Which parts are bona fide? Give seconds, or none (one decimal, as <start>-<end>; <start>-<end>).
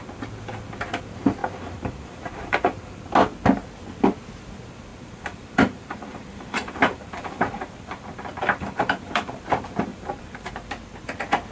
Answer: 0.0-1.4; 3.0-4.9; 9.4-9.9; 10.5-11.5